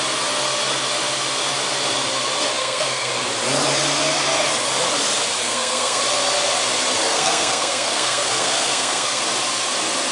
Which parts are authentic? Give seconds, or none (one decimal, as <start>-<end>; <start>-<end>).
0.0-2.6; 3.1-5.4; 6.0-7.1; 9.2-10.1